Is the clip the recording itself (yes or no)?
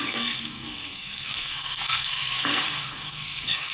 no